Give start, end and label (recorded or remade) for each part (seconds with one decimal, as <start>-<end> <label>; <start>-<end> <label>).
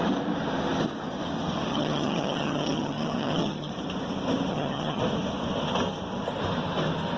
0.0-1.7 recorded; 1.7-3.7 remade; 3.7-4.5 recorded; 4.5-5.0 remade; 5.0-7.2 recorded